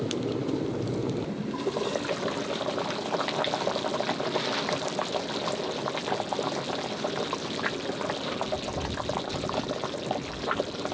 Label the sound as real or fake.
real